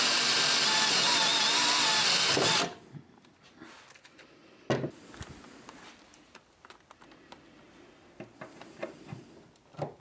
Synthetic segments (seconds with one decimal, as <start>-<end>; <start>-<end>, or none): none